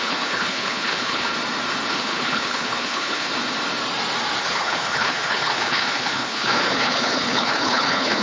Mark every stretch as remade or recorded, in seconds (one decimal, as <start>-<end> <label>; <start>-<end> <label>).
0.0-1.3 remade; 1.3-1.9 recorded; 1.9-3.3 remade; 3.3-4.4 recorded; 4.4-8.2 remade